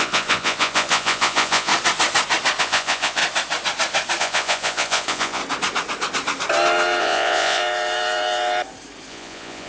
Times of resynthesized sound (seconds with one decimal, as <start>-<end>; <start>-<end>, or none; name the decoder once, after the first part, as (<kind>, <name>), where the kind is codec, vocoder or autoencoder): 0.0-1.7 (vocoder, Vocos); 2.6-3.2; 4.2-5.4; 7.0-7.6; 9.1-9.7